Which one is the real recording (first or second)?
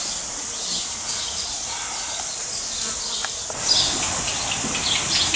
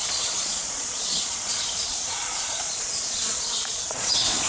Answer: first